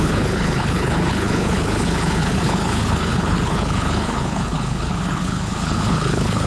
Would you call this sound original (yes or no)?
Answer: no